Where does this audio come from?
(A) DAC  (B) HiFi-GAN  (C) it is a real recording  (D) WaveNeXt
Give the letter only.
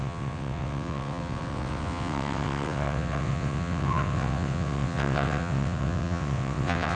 D